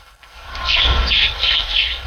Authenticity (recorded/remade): remade